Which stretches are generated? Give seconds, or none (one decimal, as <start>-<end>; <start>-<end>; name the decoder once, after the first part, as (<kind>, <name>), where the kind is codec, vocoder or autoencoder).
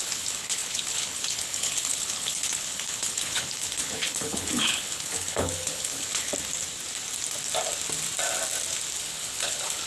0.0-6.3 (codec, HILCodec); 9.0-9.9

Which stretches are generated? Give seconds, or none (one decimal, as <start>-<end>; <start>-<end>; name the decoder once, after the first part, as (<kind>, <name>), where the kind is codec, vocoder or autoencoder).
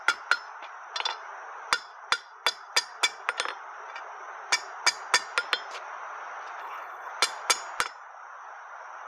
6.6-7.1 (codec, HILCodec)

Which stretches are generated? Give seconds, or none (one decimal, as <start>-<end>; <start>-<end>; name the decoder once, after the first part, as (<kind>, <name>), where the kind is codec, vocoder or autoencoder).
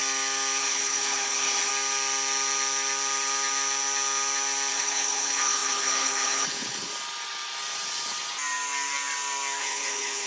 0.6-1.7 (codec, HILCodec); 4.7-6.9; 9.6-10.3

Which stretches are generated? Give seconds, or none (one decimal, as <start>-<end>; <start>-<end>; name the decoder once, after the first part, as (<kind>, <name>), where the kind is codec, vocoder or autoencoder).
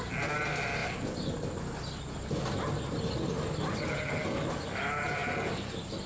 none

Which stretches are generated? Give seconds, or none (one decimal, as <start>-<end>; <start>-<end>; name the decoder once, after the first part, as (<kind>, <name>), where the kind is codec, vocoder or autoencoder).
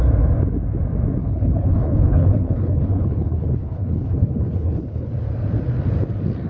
1.2-5.1 (codec, HILCodec)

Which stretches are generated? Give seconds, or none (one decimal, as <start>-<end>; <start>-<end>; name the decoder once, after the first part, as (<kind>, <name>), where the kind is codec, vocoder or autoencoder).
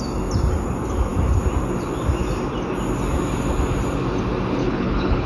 4.6-5.3 (codec, HILCodec)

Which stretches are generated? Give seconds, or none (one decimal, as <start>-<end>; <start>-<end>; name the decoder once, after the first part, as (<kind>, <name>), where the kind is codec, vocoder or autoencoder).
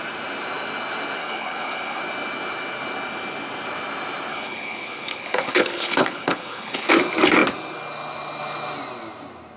1.2-2.0 (codec, HILCodec); 4.3-6.9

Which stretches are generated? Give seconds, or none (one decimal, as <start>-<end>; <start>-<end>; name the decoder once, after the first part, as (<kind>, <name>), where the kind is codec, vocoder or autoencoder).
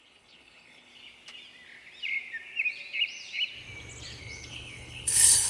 0.0-0.9 (codec, HILCodec); 4.2-5.5